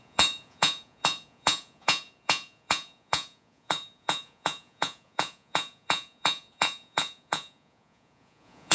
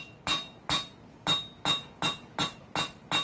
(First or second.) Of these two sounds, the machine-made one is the first